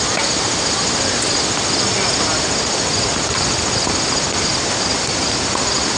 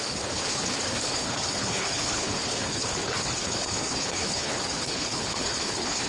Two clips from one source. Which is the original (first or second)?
first